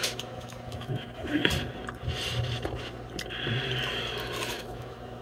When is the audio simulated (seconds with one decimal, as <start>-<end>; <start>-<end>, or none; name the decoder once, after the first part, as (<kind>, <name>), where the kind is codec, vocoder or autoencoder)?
0.0-1.4 (autoencoder, DAC-VAE); 4.5-5.2